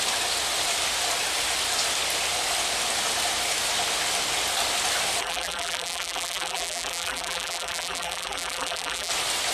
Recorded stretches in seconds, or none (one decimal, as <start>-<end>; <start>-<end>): 0.0-5.2; 9.1-9.5